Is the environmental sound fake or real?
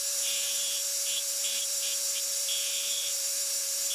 fake